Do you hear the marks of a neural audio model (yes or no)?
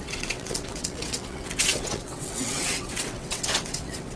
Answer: yes